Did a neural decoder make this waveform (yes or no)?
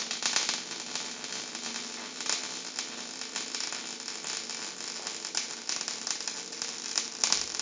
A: no